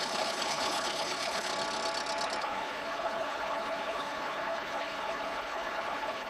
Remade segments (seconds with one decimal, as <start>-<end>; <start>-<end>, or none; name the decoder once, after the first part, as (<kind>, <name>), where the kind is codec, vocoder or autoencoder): 0.0-1.5 (codec, HILCodec); 2.4-6.3